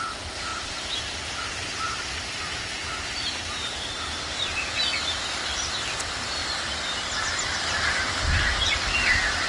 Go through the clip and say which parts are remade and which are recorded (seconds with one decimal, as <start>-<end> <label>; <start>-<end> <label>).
0.0-9.5 recorded